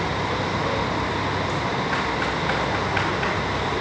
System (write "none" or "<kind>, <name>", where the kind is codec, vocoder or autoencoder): none